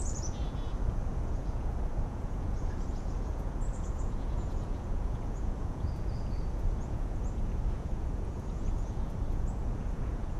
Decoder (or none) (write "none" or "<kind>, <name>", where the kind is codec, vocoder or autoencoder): vocoder, Vocos